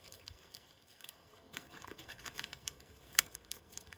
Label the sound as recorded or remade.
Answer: remade